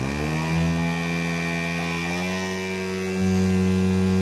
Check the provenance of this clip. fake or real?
real